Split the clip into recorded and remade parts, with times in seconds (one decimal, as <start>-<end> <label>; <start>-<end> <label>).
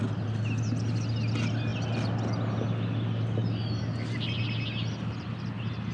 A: 0.0-5.9 recorded